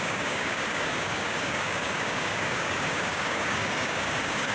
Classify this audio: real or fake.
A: fake